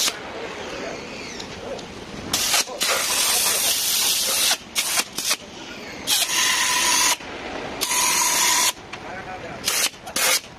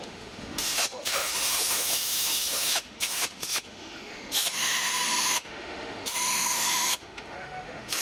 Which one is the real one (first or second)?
first